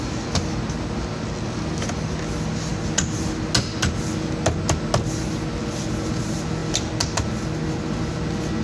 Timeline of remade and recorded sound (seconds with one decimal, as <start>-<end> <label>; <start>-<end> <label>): 0.0-8.6 recorded